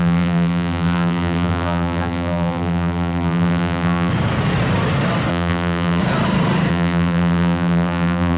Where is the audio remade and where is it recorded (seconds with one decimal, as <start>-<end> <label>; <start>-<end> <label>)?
0.0-4.1 remade; 4.1-5.3 recorded; 5.3-6.0 remade; 6.0-6.7 recorded; 6.7-8.4 remade